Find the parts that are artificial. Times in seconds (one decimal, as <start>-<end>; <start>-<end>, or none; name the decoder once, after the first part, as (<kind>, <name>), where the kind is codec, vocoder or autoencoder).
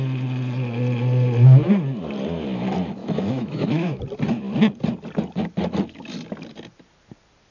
3.0-4.0 (autoencoder, DAC-VAE)